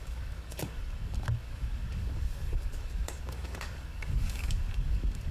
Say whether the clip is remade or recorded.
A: remade